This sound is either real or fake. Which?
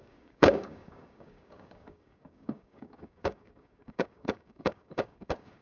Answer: fake